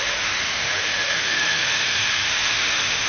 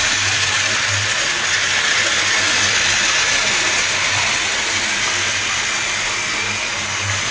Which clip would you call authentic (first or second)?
second